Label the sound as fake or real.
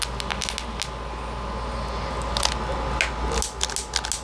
real